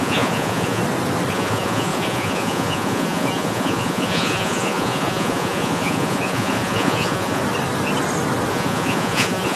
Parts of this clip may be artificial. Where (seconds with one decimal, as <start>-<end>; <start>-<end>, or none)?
0.0-0.8; 1.3-7.4; 8.5-9.6